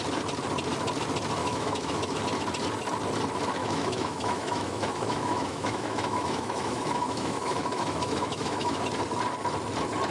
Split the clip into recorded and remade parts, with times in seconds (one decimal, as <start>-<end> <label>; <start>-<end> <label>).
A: 0.0-1.4 recorded; 1.4-2.2 remade; 2.2-3.6 recorded; 3.6-8.8 remade; 8.8-10.1 recorded